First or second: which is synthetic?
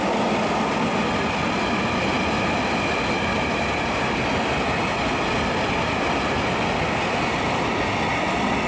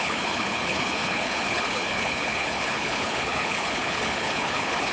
second